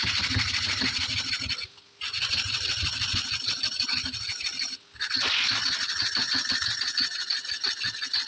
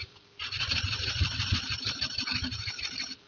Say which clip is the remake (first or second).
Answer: second